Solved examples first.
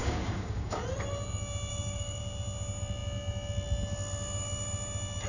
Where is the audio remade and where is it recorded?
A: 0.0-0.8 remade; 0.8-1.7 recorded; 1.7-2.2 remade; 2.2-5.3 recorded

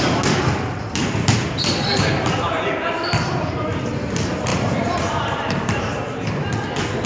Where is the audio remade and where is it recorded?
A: 0.0-4.5 recorded; 4.5-6.5 remade; 6.5-7.1 recorded

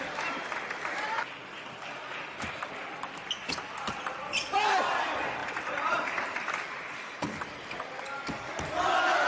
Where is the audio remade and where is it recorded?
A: 0.0-1.4 recorded; 1.4-3.1 remade; 3.1-5.4 recorded; 5.4-8.8 remade; 8.8-9.3 recorded

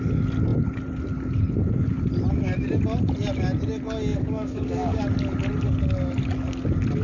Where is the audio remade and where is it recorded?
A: 0.0-4.1 recorded; 4.1-5.0 remade; 5.0-7.0 recorded

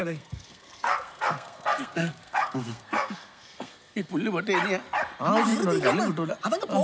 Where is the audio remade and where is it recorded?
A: 0.0-4.1 remade; 4.1-6.8 recorded

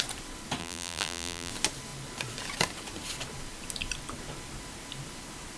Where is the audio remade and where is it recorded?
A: 0.0-0.6 recorded; 0.6-1.5 remade; 1.5-5.6 recorded

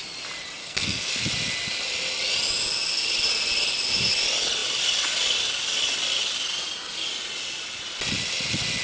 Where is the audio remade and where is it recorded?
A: 0.0-0.6 recorded; 0.6-1.2 remade; 1.2-8.8 recorded

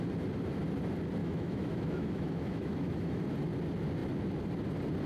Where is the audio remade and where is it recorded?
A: 0.0-1.2 recorded; 1.2-3.2 remade; 3.2-5.1 recorded